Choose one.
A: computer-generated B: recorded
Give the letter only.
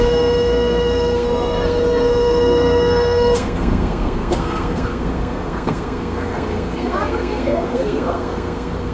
A